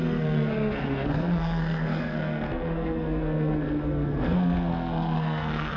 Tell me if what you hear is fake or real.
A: fake